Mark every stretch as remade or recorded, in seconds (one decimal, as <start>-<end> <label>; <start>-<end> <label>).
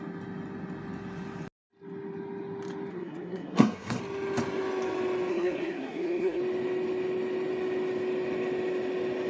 0.0-2.9 recorded; 2.9-4.0 remade; 4.0-5.3 recorded; 5.3-6.4 remade; 6.4-9.3 recorded